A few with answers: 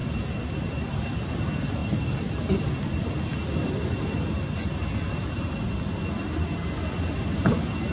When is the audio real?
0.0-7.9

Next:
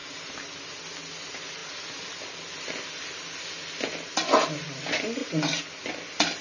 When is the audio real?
0.0-6.4

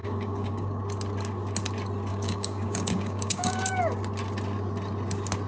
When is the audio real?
0.8-2.1; 3.7-5.5

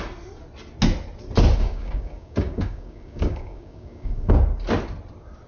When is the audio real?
0.0-1.6; 4.3-5.5

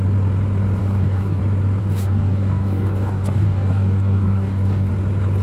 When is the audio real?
0.0-0.8; 1.4-1.8; 4.9-5.4